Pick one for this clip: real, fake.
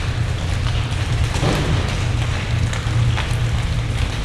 real